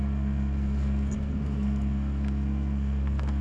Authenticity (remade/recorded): remade